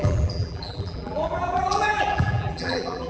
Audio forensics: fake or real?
fake